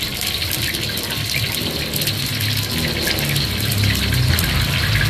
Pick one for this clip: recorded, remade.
recorded